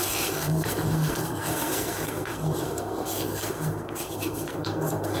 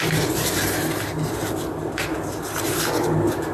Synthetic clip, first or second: first